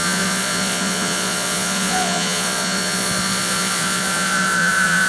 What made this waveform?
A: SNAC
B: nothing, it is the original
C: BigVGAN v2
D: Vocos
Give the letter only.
D